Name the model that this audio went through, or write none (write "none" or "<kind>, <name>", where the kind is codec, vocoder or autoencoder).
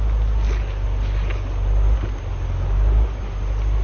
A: none